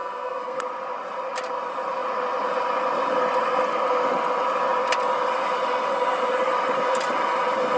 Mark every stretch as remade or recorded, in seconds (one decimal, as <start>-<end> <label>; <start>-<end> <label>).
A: 0.0-0.6 remade; 0.6-7.8 recorded